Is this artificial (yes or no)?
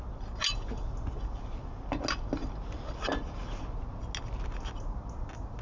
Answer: no